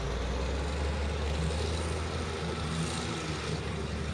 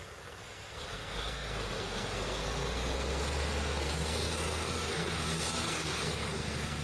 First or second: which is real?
first